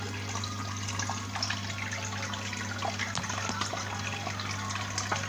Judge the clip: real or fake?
real